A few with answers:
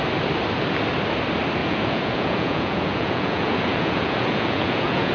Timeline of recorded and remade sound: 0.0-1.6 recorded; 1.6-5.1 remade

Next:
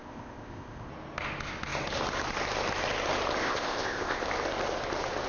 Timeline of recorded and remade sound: 0.0-0.9 remade; 0.9-3.4 recorded; 3.4-4.2 remade; 4.2-5.3 recorded

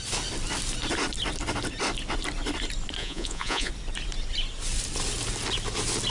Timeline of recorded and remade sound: 0.0-3.0 recorded; 3.0-3.7 remade; 3.7-6.1 recorded